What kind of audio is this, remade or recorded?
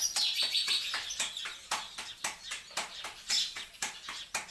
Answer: remade